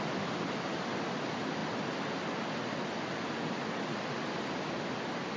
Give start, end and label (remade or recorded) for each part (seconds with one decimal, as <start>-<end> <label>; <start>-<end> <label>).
0.0-5.4 recorded